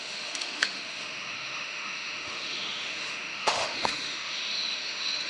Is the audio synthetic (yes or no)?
yes